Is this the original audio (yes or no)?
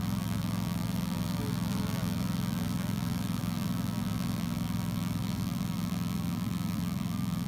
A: no